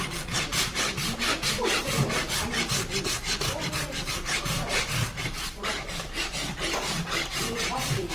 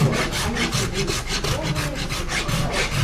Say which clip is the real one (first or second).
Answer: second